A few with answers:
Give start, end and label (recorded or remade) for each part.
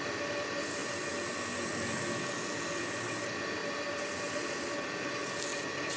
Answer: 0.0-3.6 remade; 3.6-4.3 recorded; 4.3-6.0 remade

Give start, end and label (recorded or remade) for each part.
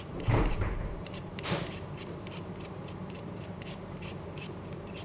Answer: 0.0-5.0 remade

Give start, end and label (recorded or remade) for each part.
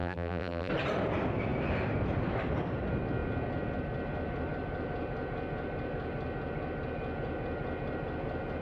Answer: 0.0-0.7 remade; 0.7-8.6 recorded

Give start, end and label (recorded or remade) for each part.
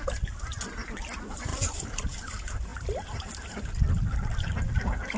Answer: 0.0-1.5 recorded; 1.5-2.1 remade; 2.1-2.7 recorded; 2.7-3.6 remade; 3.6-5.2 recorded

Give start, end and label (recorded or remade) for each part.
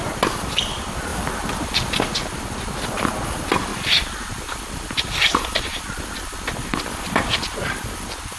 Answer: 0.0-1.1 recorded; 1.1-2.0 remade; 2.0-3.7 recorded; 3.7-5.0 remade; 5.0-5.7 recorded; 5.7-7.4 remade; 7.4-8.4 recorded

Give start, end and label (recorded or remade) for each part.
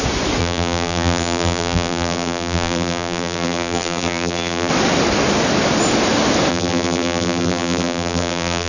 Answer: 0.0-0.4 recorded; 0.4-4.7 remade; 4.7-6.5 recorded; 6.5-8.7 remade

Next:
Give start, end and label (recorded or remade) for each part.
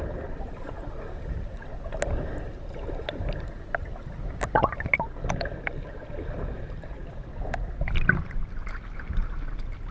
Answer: 0.0-9.9 recorded